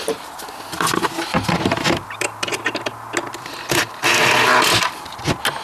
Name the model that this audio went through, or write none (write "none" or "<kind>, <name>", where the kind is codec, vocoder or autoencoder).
none